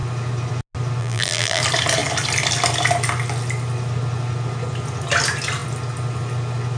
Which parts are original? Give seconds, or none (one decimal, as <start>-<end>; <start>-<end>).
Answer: 0.0-1.0; 1.6-6.8